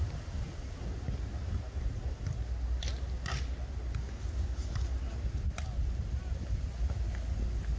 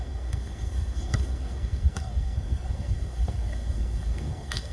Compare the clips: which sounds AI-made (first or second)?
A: second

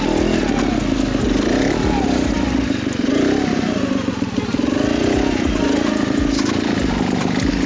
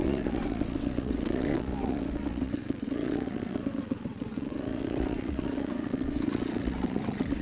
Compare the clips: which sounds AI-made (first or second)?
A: second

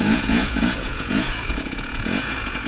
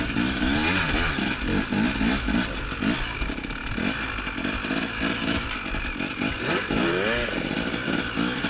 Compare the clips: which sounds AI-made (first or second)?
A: first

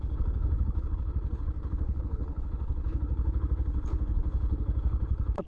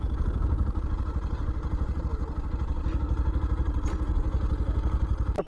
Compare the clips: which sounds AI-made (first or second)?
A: first